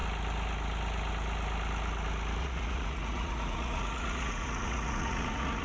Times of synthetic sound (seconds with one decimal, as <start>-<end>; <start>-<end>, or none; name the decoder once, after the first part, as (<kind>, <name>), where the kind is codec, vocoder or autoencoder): 2.4-5.6 (vocoder, Vocos)